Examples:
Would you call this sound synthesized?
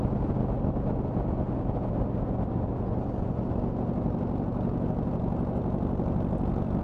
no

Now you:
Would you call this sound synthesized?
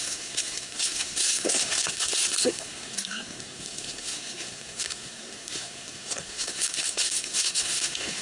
yes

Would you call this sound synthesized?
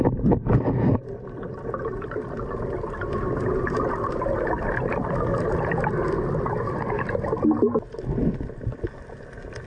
no